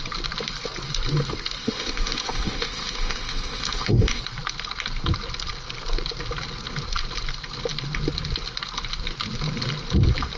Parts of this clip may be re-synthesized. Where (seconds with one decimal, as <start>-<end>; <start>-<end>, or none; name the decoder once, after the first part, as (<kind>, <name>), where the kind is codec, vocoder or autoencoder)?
1.6-4.2 (autoencoder, DAC-VAE)